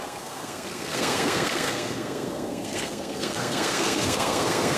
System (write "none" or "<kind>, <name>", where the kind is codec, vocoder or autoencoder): codec, SNAC